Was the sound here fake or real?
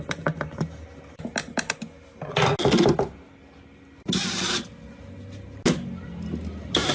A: real